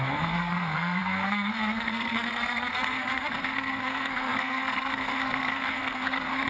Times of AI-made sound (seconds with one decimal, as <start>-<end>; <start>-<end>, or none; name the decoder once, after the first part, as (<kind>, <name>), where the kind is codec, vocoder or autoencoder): 0.0-6.5 (codec, SNAC)